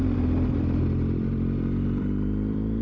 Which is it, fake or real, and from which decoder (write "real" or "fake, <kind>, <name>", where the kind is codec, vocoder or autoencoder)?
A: fake, vocoder, BigVGAN v2